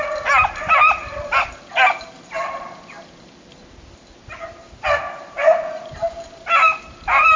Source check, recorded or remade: recorded